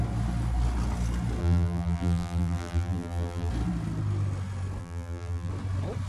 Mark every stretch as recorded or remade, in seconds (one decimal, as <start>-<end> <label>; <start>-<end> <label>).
0.0-1.4 recorded; 1.4-3.5 remade; 3.5-4.8 recorded; 4.8-5.5 remade; 5.5-6.1 recorded